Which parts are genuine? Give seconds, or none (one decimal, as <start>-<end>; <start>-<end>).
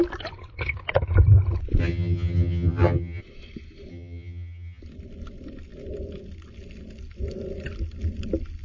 0.0-1.8; 3.2-3.9; 4.8-8.6